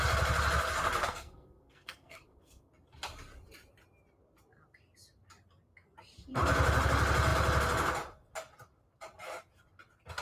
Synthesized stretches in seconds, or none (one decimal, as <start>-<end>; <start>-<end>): 1.0-2.7